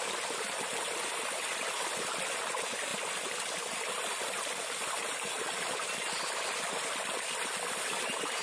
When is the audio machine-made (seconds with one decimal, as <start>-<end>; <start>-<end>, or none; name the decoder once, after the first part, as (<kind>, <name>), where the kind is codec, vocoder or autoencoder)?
none